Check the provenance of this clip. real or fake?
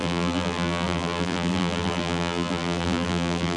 fake